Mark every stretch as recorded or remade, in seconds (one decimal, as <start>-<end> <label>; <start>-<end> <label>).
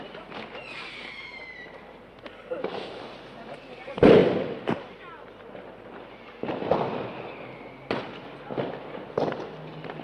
0.0-10.0 recorded